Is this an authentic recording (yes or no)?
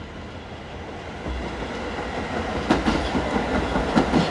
yes